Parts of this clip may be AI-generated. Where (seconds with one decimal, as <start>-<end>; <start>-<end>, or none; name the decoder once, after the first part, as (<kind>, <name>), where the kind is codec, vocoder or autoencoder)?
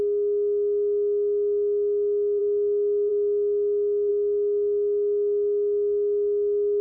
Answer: 2.4-3.1 (autoencoder, DAC-VAE); 4.1-6.8